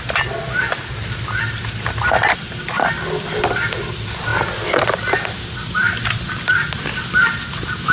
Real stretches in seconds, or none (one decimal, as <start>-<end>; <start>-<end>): 0.0-7.9